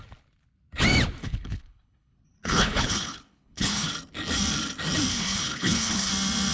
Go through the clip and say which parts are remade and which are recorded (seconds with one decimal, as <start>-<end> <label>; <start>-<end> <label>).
0.0-1.2 recorded; 1.2-3.9 remade; 3.9-5.1 recorded; 5.1-6.1 remade; 6.1-6.5 recorded